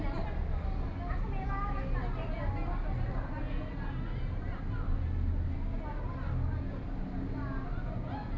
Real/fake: real